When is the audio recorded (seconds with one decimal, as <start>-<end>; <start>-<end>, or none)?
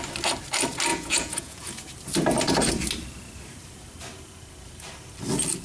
0.0-0.9; 1.9-5.6